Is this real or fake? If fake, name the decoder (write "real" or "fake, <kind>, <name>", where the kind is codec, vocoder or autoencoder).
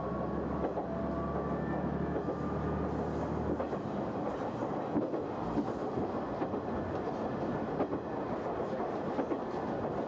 real